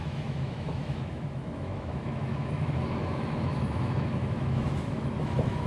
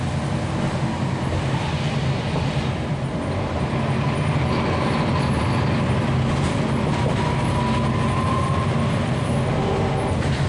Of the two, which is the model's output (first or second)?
first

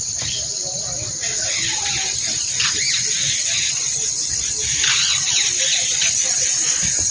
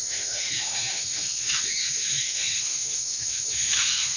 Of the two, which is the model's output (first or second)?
second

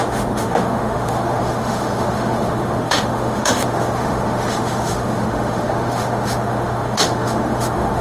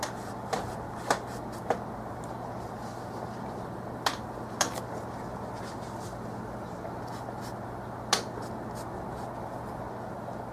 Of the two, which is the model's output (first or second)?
first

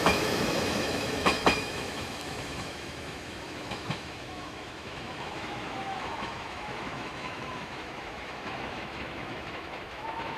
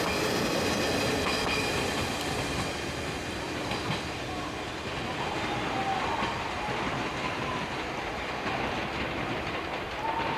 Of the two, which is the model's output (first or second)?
first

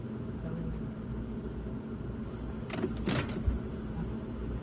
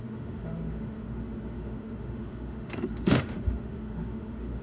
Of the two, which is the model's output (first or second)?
second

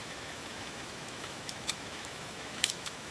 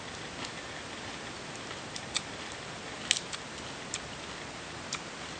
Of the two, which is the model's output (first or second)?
first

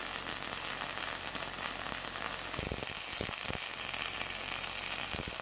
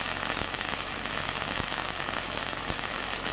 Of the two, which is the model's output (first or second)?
second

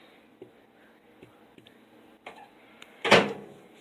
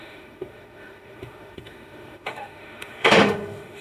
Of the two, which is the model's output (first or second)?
second